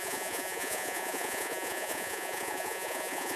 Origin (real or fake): fake